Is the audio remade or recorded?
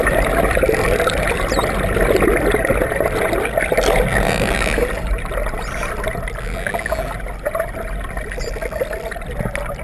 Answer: recorded